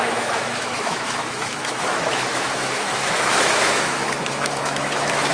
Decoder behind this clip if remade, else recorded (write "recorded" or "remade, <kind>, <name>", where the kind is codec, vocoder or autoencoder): remade, autoencoder, DAC-VAE